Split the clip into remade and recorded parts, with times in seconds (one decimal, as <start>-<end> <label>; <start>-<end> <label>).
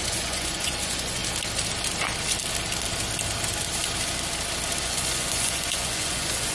0.0-1.2 remade; 1.2-4.8 recorded; 4.8-6.5 remade